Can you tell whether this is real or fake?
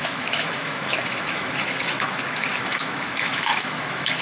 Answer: fake